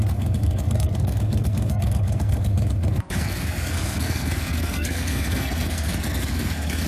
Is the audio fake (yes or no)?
yes